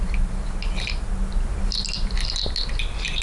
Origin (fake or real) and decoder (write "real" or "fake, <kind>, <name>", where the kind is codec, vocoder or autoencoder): real